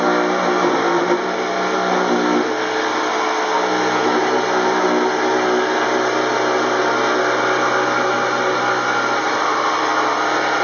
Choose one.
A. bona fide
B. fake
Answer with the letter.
A